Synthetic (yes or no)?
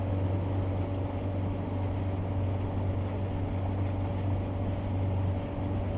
no